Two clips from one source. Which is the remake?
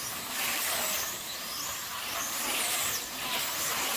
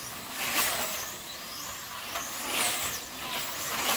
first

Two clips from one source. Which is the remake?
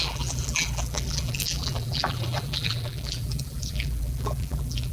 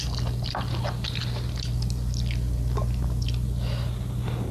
first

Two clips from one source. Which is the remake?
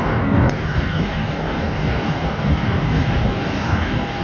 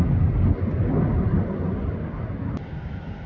first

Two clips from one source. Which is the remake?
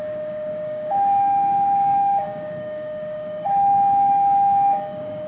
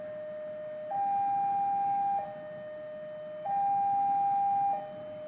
first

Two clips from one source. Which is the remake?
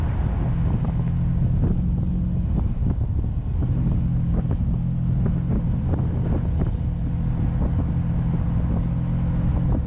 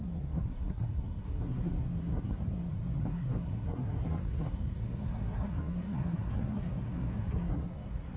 second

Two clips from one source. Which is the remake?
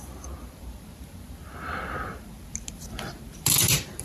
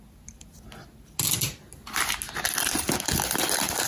first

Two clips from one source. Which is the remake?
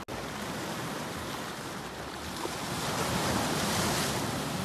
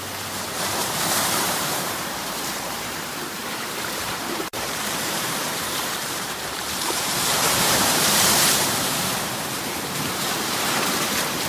second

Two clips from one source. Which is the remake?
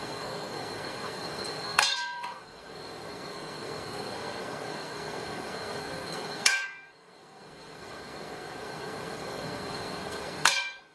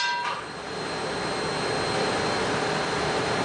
first